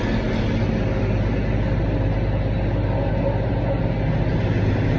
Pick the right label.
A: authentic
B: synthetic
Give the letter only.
A